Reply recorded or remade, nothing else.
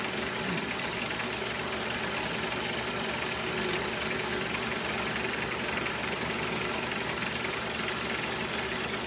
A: recorded